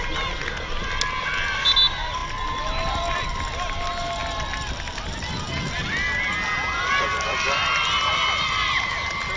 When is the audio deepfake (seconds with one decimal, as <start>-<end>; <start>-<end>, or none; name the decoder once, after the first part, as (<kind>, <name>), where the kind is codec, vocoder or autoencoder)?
none